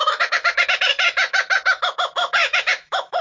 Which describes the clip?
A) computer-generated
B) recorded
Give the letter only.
A